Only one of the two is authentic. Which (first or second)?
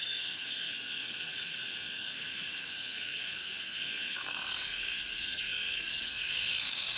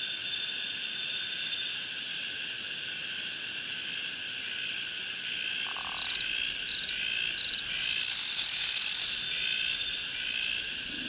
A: second